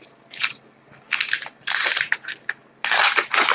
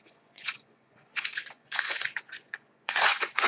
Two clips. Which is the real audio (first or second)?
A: first